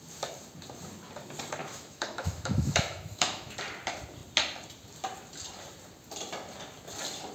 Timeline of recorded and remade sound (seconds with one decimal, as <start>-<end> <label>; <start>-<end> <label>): 0.0-1.6 recorded; 1.6-3.5 remade; 3.5-7.3 recorded